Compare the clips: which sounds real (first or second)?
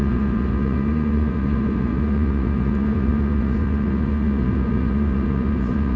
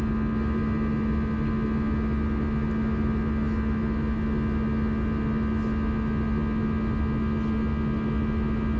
second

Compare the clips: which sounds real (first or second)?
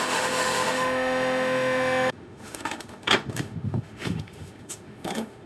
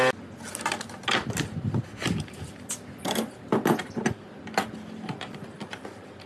second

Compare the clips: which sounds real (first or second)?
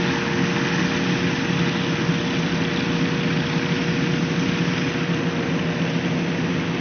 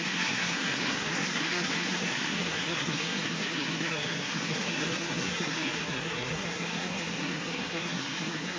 first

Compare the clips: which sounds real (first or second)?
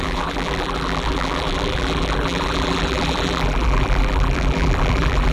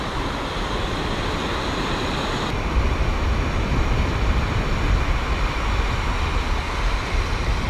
second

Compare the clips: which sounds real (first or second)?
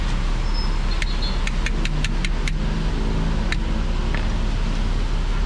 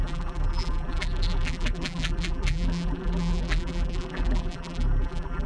first